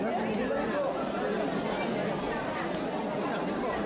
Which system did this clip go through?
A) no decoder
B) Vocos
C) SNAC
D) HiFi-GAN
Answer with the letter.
A